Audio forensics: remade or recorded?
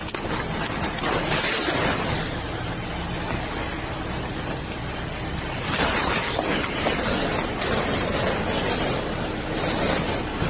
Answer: recorded